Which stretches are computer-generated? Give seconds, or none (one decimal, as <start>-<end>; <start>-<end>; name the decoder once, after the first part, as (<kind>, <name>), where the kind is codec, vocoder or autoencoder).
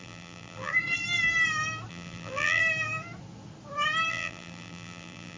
0.0-0.7 (vocoder, BigVGAN v2); 1.9-2.6; 4.1-5.4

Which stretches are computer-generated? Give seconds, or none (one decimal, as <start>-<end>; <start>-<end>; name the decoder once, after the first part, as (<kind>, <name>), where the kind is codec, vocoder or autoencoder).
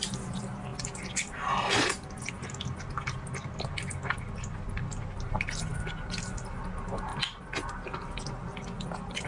none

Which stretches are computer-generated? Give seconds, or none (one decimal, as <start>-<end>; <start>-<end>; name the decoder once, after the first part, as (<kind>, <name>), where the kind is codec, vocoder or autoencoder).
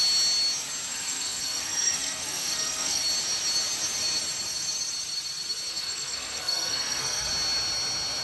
0.9-3.0 (codec, SNAC); 5.7-7.3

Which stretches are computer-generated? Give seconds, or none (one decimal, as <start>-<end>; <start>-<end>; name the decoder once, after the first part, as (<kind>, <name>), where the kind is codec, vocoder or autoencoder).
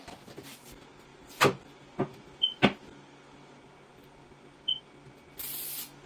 none